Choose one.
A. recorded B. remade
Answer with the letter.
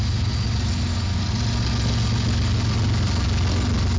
A